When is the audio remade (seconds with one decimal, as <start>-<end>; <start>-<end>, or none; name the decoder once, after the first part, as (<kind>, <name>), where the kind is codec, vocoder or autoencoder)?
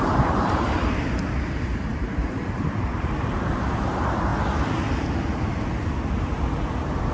0.0-4.3 (vocoder, BigVGAN v2); 6.2-7.1